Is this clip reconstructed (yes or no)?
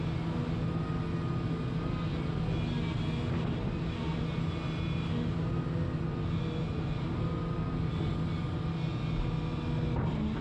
no